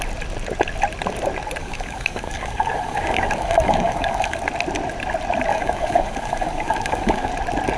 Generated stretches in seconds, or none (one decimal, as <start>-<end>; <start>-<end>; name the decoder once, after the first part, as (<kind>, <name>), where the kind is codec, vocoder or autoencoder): 1.6-4.4 (codec, DAC); 5.5-7.3